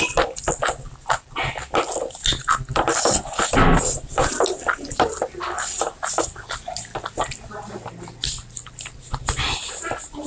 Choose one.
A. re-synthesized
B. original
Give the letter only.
B